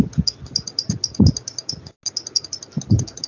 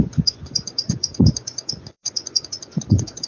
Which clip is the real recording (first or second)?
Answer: first